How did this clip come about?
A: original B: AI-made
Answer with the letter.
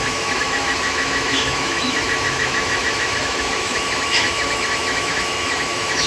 B